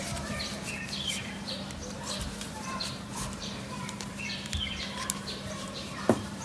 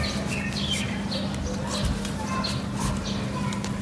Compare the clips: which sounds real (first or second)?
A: second